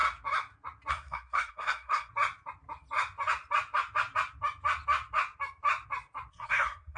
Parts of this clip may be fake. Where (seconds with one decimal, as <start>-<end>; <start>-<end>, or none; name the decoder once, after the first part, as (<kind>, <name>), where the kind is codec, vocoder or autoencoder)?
0.9-2.1 (codec, SNAC); 6.3-7.0